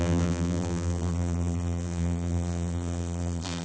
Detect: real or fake fake